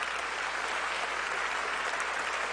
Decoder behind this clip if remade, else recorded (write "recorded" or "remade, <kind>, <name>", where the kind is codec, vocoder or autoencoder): recorded